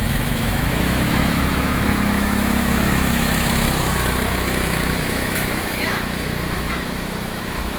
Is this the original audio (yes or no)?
no